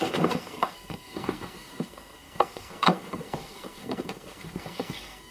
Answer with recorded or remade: remade